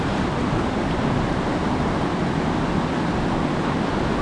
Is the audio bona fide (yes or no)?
yes